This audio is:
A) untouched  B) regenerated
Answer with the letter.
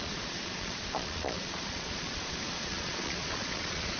B